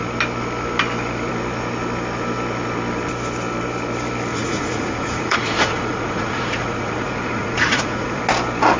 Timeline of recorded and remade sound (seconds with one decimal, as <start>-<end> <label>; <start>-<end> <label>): 0.0-4.3 recorded; 4.3-8.2 remade; 8.2-8.8 recorded